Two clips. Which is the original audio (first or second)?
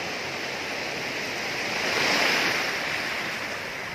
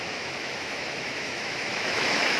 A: first